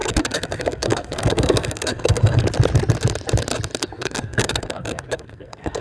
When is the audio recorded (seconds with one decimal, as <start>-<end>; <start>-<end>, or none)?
2.4-3.8